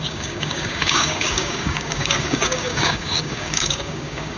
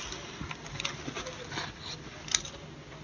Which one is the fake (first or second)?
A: first